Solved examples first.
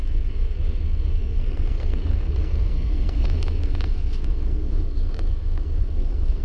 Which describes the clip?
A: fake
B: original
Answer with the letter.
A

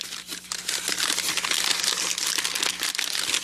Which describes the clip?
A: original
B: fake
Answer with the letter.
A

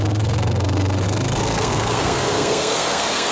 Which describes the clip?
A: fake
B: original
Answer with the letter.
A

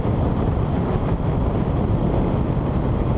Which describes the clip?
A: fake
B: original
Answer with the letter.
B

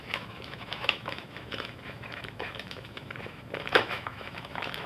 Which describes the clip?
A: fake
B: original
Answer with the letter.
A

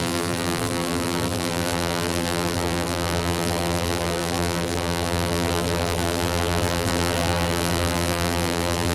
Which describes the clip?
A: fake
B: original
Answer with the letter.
A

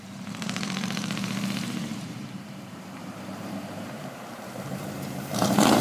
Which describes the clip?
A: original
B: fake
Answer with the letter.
B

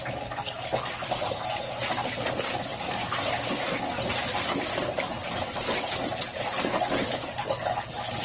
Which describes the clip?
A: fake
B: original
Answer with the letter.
B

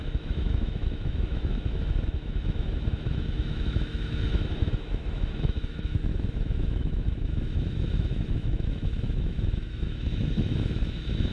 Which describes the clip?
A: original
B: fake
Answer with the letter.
B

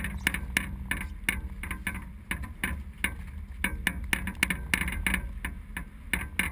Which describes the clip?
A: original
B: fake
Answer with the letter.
A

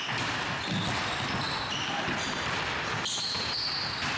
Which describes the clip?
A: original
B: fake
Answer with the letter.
A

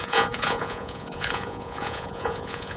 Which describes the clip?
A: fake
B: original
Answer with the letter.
A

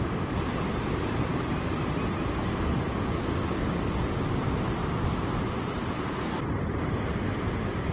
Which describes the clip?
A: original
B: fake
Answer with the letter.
A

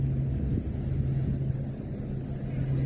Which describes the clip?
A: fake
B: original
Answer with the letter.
B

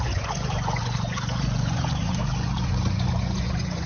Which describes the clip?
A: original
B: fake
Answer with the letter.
B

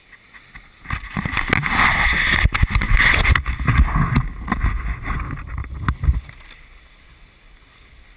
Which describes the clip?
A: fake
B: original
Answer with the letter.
B